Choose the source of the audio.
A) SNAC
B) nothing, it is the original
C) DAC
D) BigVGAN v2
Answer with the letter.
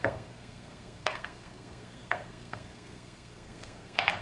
A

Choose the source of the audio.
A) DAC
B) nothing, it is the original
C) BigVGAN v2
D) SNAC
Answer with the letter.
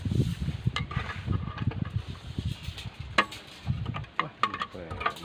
B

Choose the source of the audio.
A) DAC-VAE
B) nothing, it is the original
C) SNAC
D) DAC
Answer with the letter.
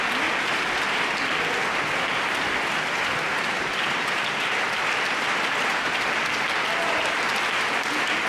B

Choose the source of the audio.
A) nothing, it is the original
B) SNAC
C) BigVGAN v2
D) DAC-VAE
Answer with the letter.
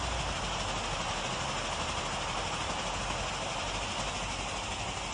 A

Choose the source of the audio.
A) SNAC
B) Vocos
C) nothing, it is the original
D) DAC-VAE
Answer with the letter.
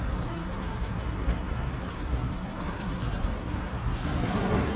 A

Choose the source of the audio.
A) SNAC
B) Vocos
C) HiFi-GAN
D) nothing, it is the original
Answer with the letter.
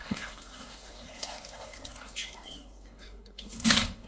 A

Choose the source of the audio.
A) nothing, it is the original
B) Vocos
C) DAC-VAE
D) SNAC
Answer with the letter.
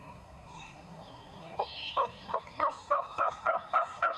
D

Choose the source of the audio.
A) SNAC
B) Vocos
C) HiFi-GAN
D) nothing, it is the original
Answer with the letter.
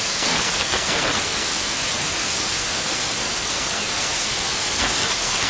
A